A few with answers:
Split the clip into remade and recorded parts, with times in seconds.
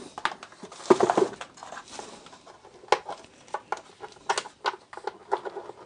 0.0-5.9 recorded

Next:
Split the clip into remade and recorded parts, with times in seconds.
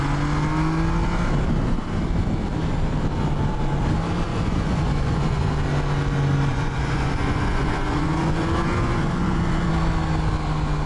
0.0-4.3 recorded; 4.3-5.5 remade; 5.5-6.5 recorded; 6.5-9.7 remade; 9.7-10.9 recorded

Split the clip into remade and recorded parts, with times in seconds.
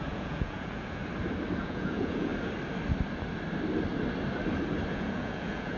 0.0-1.0 remade; 1.0-1.6 recorded; 1.6-2.3 remade; 2.3-4.9 recorded; 4.9-5.8 remade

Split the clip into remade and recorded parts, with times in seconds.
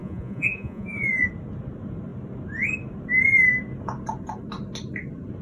0.0-1.3 remade; 1.3-5.4 recorded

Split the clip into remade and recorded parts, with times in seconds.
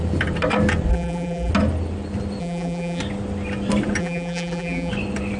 0.0-0.9 recorded; 0.9-1.5 remade; 1.5-2.4 recorded; 2.4-3.0 remade; 3.0-4.0 recorded; 4.0-4.9 remade; 4.9-5.4 recorded